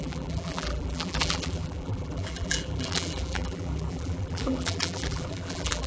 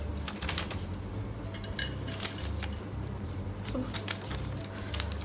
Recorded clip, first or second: second